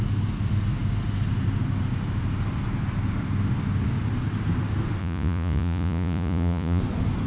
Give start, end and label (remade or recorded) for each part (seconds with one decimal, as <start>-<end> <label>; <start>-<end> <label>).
0.0-5.0 recorded; 5.0-6.8 remade; 6.8-7.3 recorded